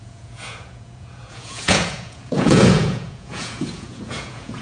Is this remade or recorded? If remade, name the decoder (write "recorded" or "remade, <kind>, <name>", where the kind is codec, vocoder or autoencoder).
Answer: remade, vocoder, Vocos